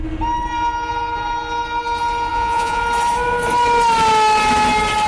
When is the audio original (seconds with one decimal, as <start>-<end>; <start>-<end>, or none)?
0.0-2.3; 2.8-5.1